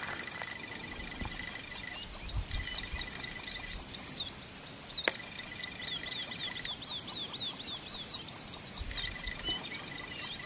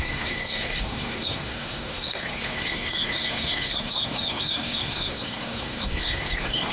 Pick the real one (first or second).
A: first